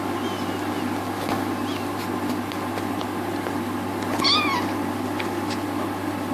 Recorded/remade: recorded